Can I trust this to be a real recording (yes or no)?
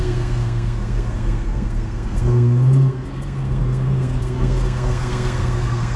no